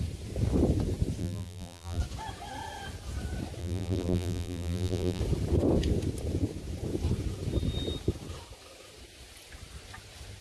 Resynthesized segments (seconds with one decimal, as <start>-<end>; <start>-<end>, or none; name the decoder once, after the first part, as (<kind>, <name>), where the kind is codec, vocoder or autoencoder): 1.2-2.0 (vocoder, BigVGAN v2); 3.6-5.2